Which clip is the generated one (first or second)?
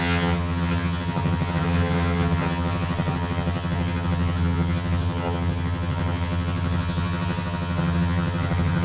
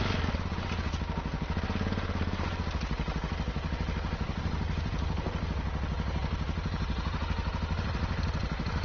first